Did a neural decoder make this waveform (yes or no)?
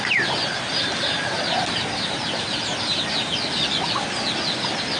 yes